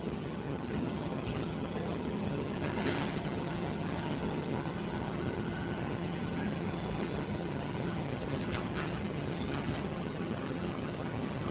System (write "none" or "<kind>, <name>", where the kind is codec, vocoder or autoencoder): vocoder, HiFi-GAN